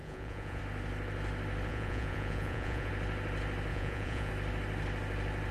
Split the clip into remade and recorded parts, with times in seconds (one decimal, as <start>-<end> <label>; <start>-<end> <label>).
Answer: 0.0-0.6 remade; 0.6-1.7 recorded; 1.7-2.9 remade; 2.9-3.7 recorded; 3.7-4.3 remade; 4.3-5.5 recorded